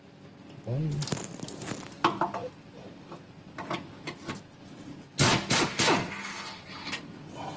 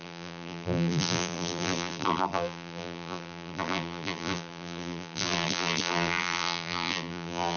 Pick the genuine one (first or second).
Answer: first